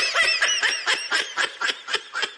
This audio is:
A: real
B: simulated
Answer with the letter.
B